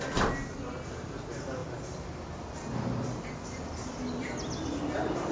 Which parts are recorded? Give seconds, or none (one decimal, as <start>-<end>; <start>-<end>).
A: 0.0-5.3